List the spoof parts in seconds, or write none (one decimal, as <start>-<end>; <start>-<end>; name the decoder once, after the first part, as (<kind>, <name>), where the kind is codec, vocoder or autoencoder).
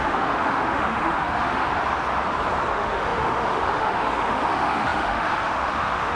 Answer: 0.0-1.7 (autoencoder, DAC-VAE); 2.7-6.2